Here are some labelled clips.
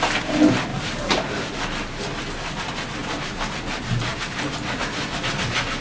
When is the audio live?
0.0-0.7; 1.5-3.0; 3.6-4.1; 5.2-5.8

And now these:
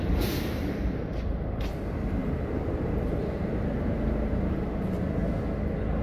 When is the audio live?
5.2-6.0

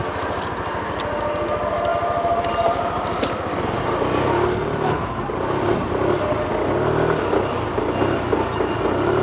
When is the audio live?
0.0-9.2

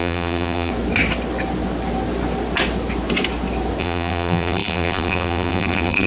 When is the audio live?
0.7-3.8

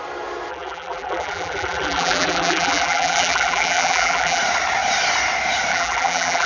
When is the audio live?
0.0-0.5; 4.4-5.7

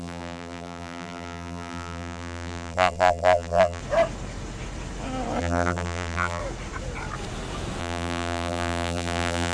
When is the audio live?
3.8-5.4; 6.4-7.8

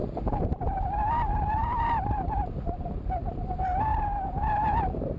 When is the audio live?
3.1-3.9